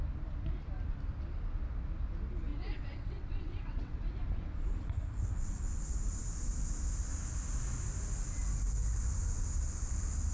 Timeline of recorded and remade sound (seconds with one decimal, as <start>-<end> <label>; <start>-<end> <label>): 0.0-2.5 recorded; 2.5-4.0 remade; 4.0-10.3 recorded